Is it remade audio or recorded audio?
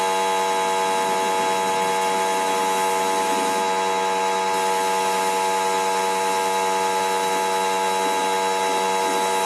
recorded